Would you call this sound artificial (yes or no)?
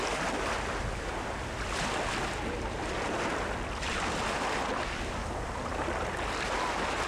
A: no